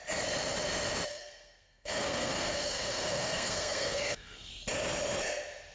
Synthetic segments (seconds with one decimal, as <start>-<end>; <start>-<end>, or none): 1.1-4.5